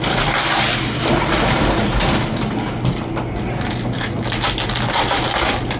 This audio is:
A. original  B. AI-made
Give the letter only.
A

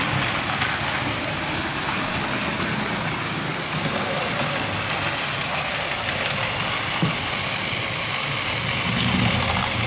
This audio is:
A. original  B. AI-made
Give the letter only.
A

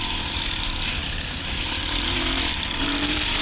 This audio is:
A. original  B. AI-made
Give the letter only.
B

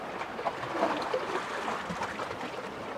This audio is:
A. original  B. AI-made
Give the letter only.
A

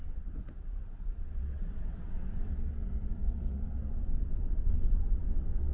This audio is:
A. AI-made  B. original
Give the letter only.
A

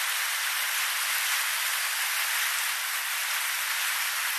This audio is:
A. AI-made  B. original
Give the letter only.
B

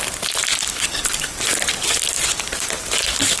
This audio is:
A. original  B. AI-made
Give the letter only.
A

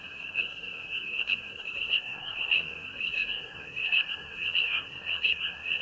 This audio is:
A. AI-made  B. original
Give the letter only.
A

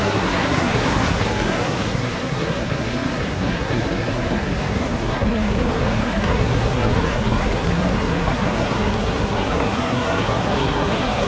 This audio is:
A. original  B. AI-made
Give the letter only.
B